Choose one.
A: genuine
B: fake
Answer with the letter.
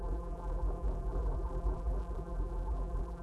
B